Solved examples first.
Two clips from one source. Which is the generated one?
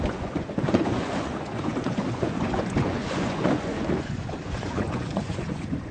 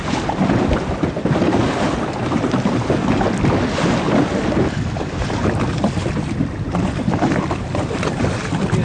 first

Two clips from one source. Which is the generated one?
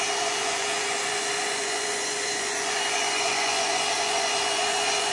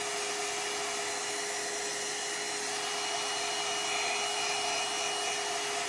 first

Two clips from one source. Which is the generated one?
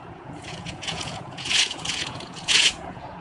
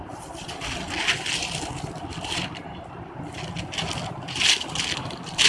first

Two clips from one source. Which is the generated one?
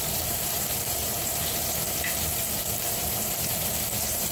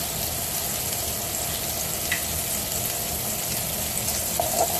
first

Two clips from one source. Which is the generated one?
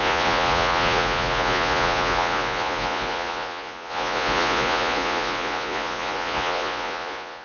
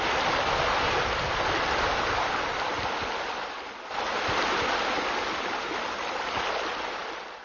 first